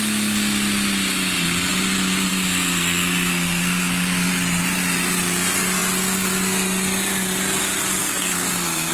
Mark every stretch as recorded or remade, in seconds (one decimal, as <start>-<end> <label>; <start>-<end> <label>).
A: 0.0-2.3 recorded; 2.3-4.3 remade; 4.3-8.0 recorded; 8.0-8.9 remade